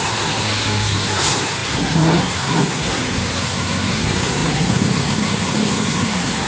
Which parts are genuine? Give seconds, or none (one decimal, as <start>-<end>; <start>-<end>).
none